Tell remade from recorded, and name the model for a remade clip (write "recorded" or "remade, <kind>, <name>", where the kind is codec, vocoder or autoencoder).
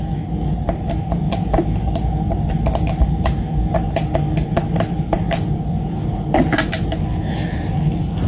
recorded